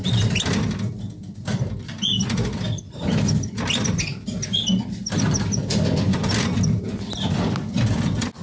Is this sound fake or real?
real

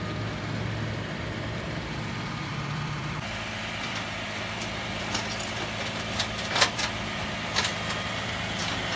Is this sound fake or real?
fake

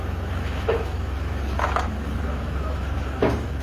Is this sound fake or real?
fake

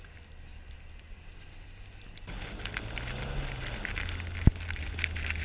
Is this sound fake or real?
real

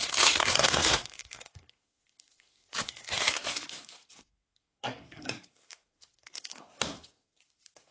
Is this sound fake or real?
fake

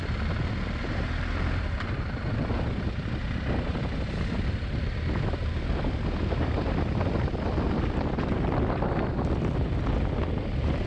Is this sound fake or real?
fake